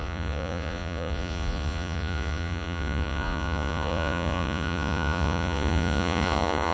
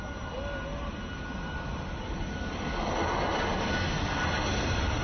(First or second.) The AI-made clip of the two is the first